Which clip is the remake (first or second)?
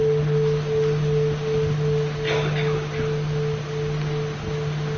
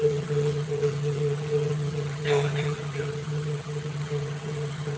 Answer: second